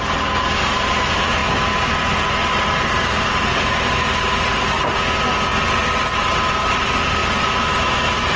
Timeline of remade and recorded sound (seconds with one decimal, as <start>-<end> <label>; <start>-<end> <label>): 0.0-8.4 recorded